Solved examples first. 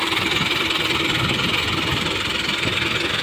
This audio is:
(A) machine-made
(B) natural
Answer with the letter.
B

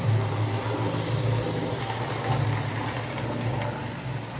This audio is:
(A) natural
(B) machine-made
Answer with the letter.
A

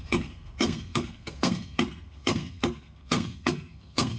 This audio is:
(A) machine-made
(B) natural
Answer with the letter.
A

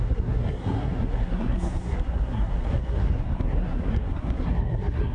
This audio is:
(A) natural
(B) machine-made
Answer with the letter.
B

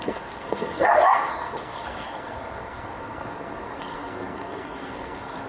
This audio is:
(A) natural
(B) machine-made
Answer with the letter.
B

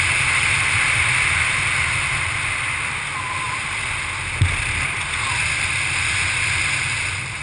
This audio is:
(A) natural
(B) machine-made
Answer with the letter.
A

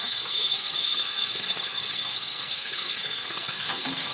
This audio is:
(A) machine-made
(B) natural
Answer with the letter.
A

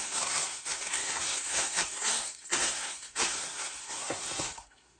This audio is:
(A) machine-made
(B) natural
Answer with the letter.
A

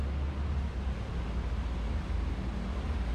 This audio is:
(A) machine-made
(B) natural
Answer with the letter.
B